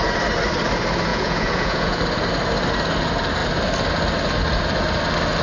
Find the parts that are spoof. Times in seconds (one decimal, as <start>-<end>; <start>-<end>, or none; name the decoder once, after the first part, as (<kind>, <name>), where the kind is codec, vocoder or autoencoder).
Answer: 1.1-2.0 (vocoder, Vocos)